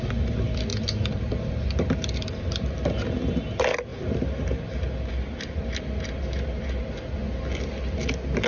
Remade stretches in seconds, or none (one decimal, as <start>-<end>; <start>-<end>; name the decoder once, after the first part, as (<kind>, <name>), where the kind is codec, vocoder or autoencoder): 0.7-2.0 (vocoder, BigVGAN v2)